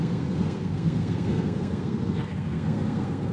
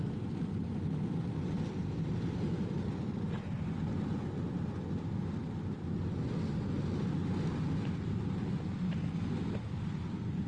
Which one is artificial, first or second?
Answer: first